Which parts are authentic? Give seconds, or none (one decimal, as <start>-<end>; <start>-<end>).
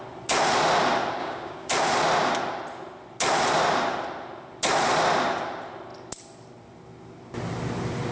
0.0-1.2; 1.7-8.1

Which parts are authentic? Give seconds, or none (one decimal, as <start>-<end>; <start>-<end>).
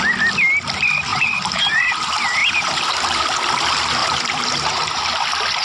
0.0-1.1; 1.6-2.4; 3.2-4.0; 5.0-5.6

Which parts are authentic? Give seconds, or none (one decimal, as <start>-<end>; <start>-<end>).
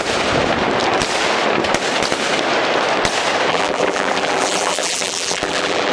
0.0-3.5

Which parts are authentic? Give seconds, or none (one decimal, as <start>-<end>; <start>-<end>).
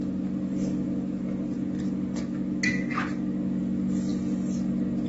0.0-5.1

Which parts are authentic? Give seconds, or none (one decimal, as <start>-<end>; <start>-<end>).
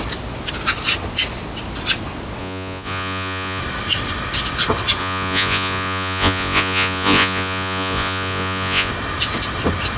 0.0-2.4; 3.6-5.0; 8.9-10.0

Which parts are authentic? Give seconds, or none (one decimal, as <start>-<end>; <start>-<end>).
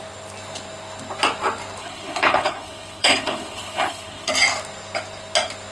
0.0-1.8; 4.3-5.7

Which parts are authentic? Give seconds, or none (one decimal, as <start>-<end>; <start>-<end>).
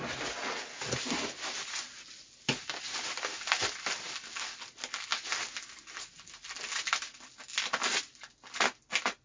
0.0-9.2